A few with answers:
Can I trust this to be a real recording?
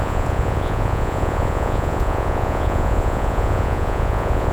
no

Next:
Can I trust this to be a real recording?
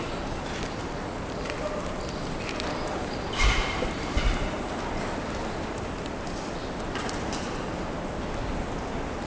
yes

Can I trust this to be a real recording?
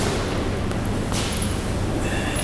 yes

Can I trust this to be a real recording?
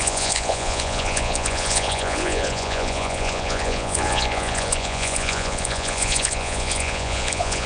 no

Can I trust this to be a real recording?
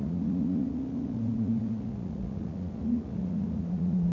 no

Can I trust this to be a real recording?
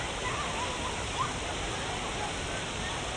yes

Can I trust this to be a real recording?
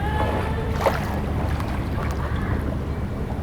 yes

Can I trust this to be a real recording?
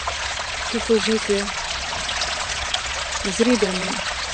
no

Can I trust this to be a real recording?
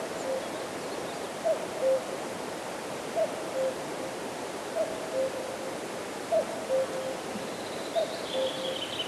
yes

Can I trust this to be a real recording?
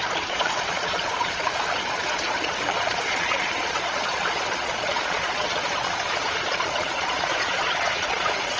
no